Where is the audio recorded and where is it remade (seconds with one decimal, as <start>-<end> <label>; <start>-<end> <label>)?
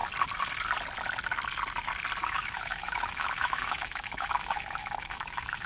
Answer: 0.0-2.2 recorded; 2.2-5.7 remade